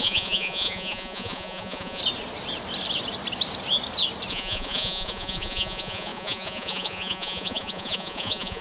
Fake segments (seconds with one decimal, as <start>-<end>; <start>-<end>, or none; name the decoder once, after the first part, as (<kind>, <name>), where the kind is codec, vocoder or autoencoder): 0.0-2.0 (vocoder, Vocos); 4.3-8.6